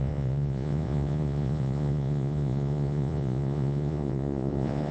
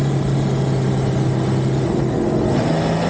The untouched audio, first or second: second